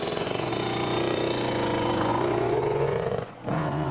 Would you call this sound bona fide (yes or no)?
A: no